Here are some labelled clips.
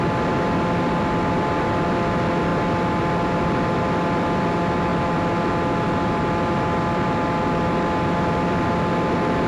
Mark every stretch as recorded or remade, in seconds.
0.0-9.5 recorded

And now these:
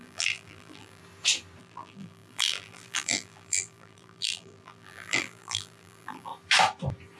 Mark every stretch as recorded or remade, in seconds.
0.0-1.0 remade; 1.0-1.6 recorded; 1.6-6.3 remade; 6.3-7.2 recorded

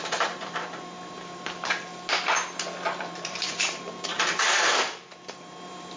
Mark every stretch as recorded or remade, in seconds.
0.0-1.9 remade; 1.9-3.0 recorded; 3.0-6.0 remade

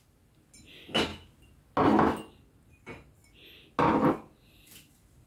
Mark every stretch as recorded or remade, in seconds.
0.0-5.3 recorded

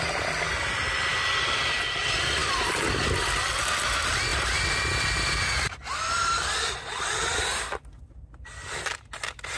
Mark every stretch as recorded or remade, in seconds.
0.0-1.1 recorded; 1.1-1.8 remade; 1.8-2.4 recorded; 2.4-3.5 remade; 3.5-9.6 recorded